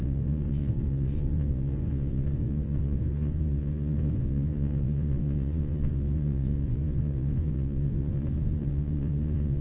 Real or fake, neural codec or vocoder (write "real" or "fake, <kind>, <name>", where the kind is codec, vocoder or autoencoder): fake, vocoder, Vocos